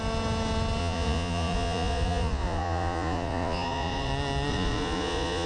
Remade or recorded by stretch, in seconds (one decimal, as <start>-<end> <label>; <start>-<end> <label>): 0.0-0.8 recorded; 0.8-4.1 remade; 4.1-4.5 recorded; 4.5-5.5 remade